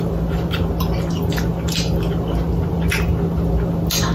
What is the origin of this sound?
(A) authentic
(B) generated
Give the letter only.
A